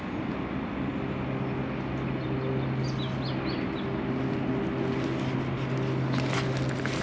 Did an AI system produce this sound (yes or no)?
no